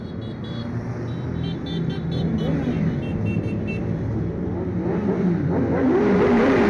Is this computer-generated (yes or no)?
no